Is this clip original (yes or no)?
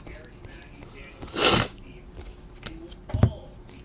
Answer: yes